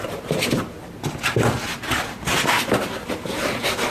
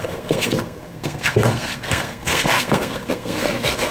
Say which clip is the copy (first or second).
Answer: second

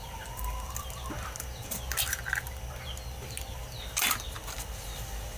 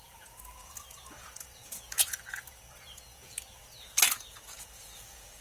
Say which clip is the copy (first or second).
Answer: second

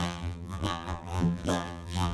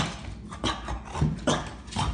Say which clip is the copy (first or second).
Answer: first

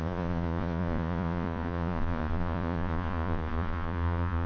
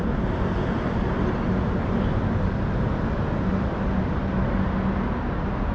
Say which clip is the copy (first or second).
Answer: first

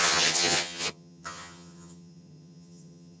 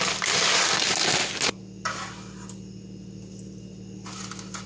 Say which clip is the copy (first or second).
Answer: first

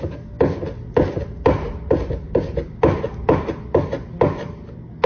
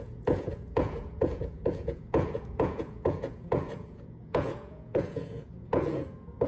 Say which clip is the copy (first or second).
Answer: second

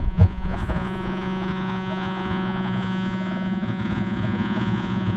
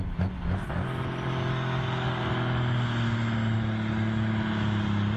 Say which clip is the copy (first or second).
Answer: first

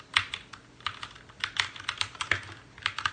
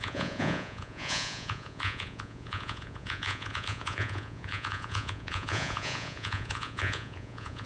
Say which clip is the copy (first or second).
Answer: second